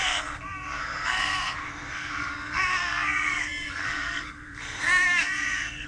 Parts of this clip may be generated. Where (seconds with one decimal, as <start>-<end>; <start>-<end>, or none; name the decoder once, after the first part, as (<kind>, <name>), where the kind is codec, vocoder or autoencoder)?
0.0-5.9 (codec, SNAC)

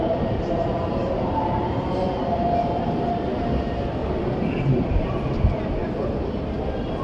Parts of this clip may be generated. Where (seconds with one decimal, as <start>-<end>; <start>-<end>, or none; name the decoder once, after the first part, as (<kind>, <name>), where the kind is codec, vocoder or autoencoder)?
1.0-1.8 (vocoder, BigVGAN v2); 4.0-5.2

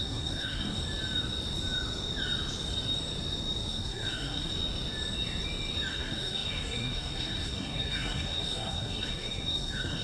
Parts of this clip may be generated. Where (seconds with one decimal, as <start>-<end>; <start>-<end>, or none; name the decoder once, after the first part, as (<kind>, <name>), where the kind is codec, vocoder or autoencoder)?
0.0-0.8 (codec, SNAC); 3.7-4.5; 5.9-10.0